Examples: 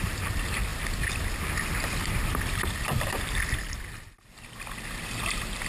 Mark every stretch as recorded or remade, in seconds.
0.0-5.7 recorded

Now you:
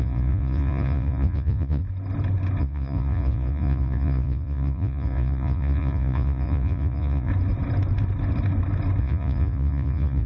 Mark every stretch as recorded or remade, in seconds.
0.0-1.8 remade; 1.8-2.6 recorded; 2.6-7.3 remade; 7.3-9.0 recorded; 9.0-10.3 remade

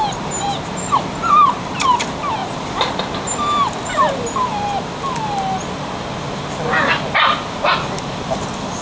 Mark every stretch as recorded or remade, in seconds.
0.0-2.4 recorded; 2.4-3.0 remade; 3.0-8.8 recorded

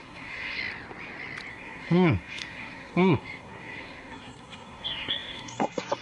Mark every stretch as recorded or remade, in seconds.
0.0-0.6 remade; 0.6-1.5 recorded; 1.5-6.0 remade

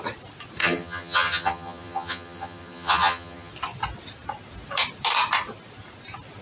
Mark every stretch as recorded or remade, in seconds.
0.0-0.6 recorded; 0.6-3.5 remade; 3.5-6.4 recorded

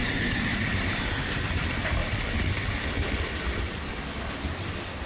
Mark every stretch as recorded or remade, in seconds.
0.0-1.3 remade; 1.3-5.1 recorded

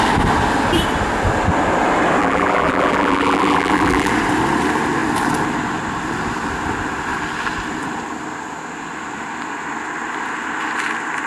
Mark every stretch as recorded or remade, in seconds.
0.0-2.2 recorded; 2.2-4.1 remade; 4.1-11.3 recorded